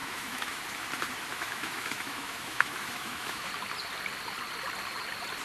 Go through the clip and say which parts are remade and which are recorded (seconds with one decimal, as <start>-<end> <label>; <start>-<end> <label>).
0.0-0.6 remade; 0.6-1.3 recorded; 1.3-3.5 remade; 3.5-5.4 recorded